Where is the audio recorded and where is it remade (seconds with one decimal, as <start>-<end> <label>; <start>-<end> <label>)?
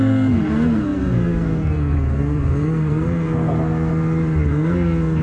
0.0-3.9 remade; 3.9-4.5 recorded; 4.5-5.2 remade